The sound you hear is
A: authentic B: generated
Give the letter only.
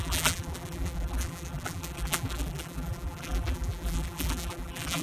B